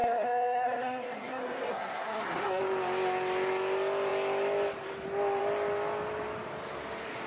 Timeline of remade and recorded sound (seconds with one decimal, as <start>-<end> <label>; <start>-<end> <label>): 0.0-2.6 remade; 2.6-7.3 recorded